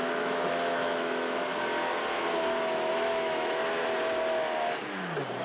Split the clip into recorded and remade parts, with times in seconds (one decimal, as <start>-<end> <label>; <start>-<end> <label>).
0.0-1.5 remade; 1.5-2.9 recorded; 2.9-3.6 remade; 3.6-5.4 recorded